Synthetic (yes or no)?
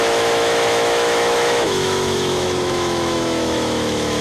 yes